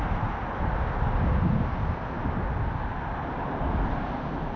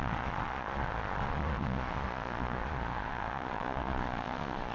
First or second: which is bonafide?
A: first